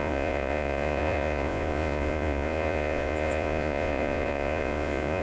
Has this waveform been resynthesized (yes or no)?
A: yes